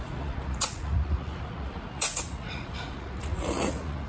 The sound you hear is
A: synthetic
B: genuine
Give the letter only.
A